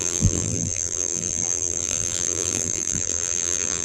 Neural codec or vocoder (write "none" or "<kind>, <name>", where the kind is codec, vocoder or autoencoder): vocoder, BigVGAN v2